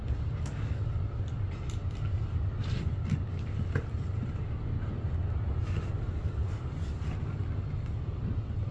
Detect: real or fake real